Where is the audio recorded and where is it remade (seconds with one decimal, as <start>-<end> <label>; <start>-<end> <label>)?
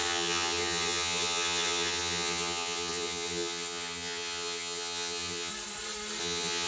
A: 0.0-5.5 remade; 5.5-6.2 recorded; 6.2-6.7 remade